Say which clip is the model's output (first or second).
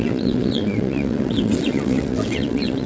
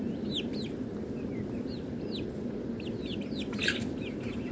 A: first